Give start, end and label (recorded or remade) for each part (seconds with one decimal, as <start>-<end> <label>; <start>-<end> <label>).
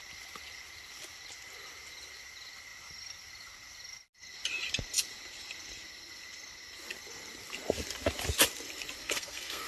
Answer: 0.0-9.0 recorded; 9.0-9.7 remade